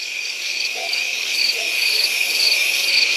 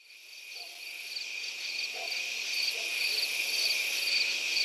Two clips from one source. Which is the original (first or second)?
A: second